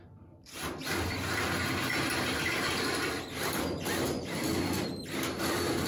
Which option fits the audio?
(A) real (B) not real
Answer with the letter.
B